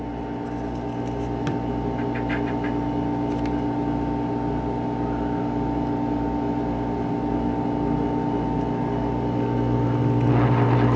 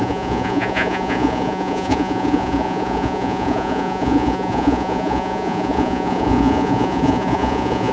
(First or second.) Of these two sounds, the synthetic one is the second